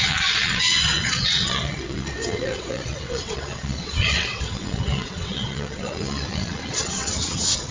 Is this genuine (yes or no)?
no